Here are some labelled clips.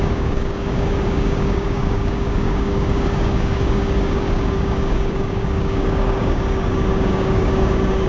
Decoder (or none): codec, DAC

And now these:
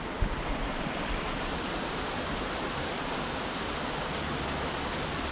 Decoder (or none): vocoder, BigVGAN v2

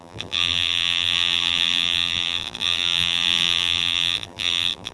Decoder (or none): vocoder, BigVGAN v2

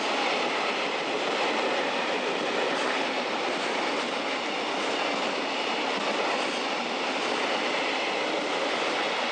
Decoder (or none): none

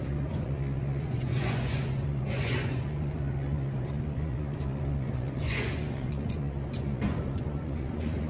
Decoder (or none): vocoder, Vocos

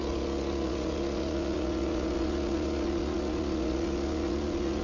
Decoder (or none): vocoder, Vocos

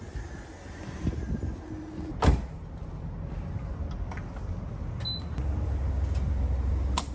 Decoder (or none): none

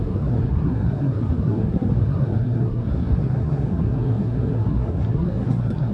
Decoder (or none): codec, SNAC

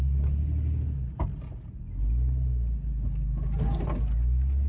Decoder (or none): none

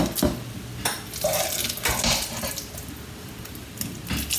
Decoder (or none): none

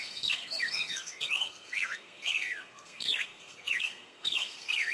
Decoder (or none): codec, SNAC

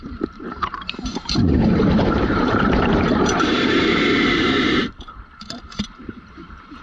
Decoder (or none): vocoder, BigVGAN v2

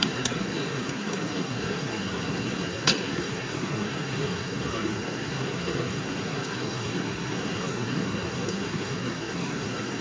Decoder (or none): codec, SNAC